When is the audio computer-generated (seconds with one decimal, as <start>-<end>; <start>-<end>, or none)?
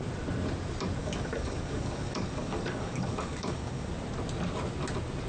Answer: 1.0-3.9